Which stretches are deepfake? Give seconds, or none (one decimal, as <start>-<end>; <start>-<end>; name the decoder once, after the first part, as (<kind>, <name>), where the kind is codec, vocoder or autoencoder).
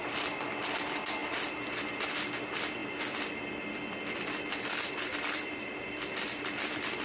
0.0-2.8 (vocoder, BigVGAN v2); 4.6-7.0